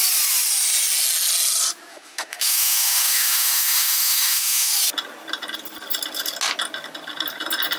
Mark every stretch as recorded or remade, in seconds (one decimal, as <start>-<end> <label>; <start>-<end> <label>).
0.0-1.9 recorded; 1.9-4.7 remade; 4.7-7.8 recorded